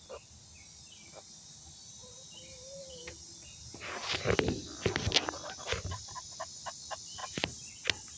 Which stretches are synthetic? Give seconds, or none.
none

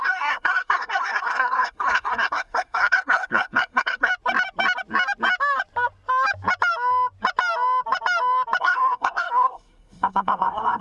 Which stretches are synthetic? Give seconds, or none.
0.0-4.1 (codec, SNAC); 8.6-10.8

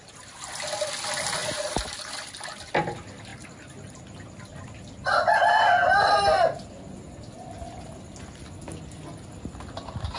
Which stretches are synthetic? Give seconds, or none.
1.4-2.6 (vocoder, BigVGAN v2)

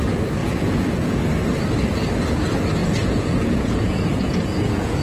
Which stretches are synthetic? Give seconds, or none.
0.4-1.2 (vocoder, Vocos); 2.8-5.0

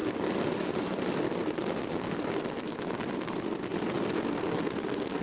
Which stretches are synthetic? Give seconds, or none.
none

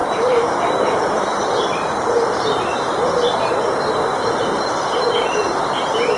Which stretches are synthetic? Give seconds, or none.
0.0-2.7 (vocoder, BigVGAN v2); 4.1-5.7

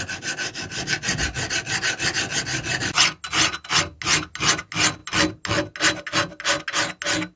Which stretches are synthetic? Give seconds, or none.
none